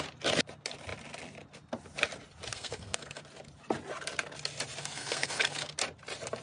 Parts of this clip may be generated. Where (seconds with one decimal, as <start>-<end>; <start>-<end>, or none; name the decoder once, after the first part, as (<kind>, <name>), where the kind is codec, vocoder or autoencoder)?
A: 2.5-3.2 (codec, SNAC); 4.8-5.7